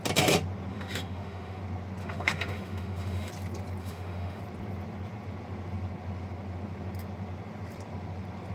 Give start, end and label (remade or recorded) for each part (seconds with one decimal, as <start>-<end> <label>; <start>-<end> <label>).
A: 0.0-0.7 recorded; 0.7-1.6 remade; 1.6-2.0 recorded; 2.0-3.3 remade; 3.3-3.8 recorded; 3.8-4.4 remade; 4.4-8.5 recorded